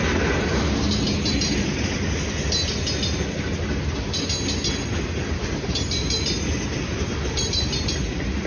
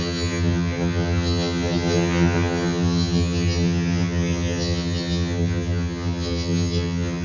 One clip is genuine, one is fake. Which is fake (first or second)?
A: second